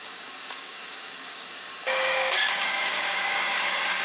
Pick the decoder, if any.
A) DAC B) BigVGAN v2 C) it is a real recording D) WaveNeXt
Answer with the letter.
A